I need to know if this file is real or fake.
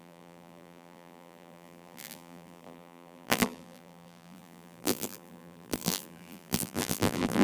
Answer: fake